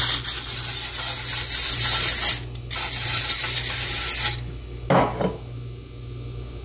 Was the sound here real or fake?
real